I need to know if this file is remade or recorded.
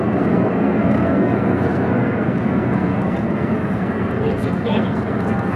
remade